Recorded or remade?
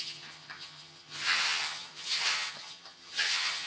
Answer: remade